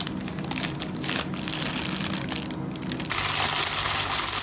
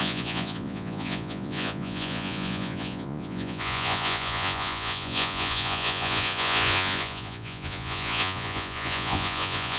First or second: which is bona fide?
first